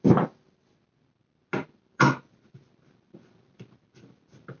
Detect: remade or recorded recorded